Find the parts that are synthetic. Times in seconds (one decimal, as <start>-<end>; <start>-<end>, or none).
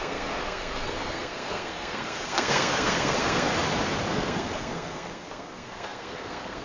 0.0-3.5; 4.1-6.6